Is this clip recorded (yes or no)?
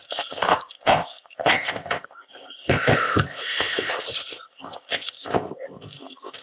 no